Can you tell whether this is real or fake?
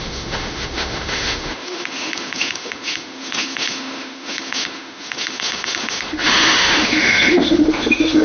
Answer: fake